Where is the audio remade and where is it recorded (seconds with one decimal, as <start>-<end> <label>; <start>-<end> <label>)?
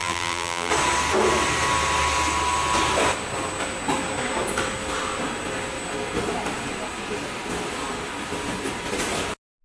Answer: 0.0-0.7 remade; 0.7-9.6 recorded